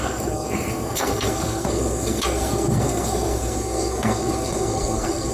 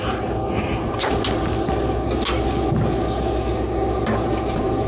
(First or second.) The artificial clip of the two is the first